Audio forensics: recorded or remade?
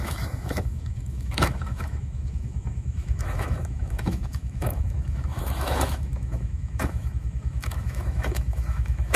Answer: remade